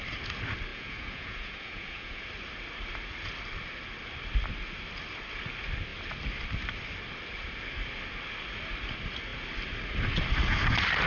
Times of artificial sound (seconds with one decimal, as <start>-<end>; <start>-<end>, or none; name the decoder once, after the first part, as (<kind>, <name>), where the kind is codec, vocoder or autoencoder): 0.7-2.2 (vocoder, Vocos)